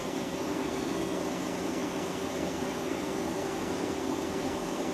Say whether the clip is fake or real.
fake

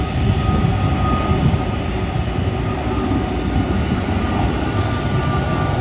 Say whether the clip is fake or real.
real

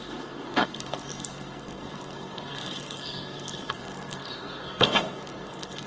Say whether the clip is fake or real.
fake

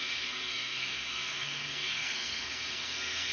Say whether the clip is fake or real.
fake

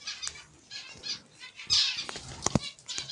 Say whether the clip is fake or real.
real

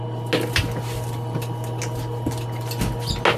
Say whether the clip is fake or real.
real